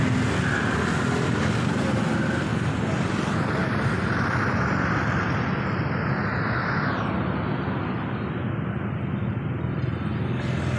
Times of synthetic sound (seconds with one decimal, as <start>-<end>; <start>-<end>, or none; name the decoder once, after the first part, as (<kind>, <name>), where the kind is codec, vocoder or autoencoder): none